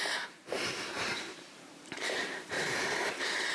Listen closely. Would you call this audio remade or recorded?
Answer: remade